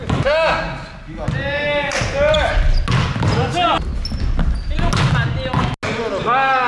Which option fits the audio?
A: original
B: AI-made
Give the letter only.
A